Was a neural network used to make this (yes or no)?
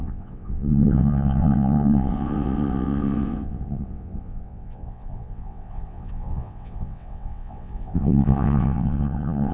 yes